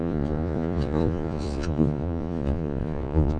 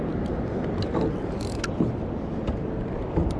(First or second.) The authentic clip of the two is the second